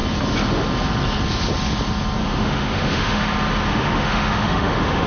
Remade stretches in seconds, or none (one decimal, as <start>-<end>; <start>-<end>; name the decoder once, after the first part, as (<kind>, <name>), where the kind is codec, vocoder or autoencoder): 2.2-3.2 (autoencoder, DAC-VAE); 3.7-5.1